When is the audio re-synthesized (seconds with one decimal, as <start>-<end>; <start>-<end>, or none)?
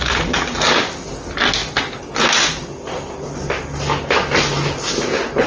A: none